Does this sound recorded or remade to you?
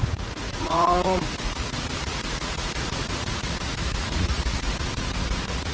remade